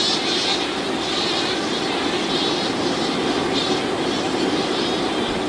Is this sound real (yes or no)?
yes